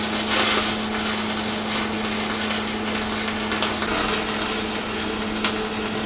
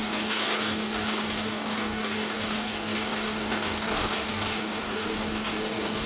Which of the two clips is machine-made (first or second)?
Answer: second